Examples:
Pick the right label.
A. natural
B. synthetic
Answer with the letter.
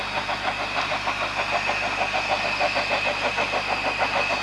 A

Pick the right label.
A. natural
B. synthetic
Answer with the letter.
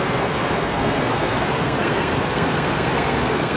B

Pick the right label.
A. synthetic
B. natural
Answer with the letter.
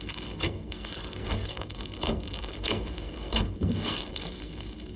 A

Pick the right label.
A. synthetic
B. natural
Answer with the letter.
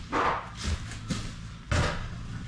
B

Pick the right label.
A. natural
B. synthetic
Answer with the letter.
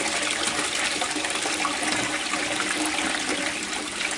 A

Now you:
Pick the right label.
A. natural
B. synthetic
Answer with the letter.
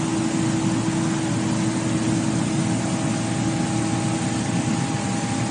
A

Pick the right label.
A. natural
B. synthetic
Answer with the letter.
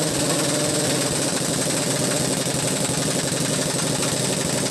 A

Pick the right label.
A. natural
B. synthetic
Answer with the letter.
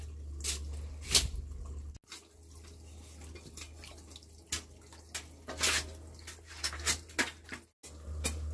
A